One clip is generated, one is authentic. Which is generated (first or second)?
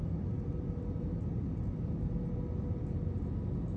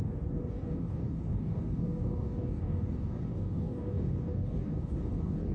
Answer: second